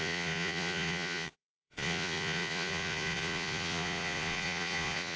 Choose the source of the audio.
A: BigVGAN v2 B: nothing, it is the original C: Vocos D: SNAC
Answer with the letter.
C